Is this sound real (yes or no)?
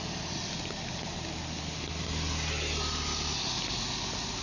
yes